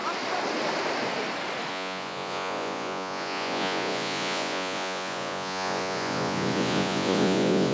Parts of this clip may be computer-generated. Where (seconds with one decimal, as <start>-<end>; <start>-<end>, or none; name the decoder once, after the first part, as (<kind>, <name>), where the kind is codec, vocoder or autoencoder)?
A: 1.7-7.7 (vocoder, Vocos)